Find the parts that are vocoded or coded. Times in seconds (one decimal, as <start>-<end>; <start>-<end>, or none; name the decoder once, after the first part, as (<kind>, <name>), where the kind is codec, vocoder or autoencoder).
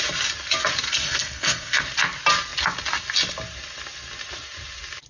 0.9-1.8 (codec, SNAC)